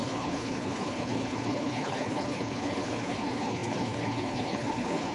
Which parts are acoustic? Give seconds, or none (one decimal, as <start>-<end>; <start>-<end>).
none